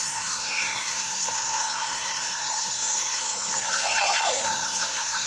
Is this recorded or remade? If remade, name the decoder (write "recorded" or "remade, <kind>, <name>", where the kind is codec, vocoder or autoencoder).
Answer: remade, codec, SNAC